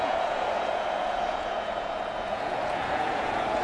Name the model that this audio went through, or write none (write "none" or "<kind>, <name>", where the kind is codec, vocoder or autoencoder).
vocoder, Vocos